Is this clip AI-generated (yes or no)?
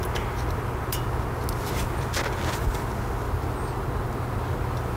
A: no